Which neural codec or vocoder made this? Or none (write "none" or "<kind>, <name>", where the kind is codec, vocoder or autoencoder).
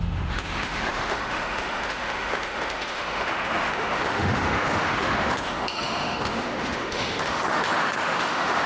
autoencoder, DAC-VAE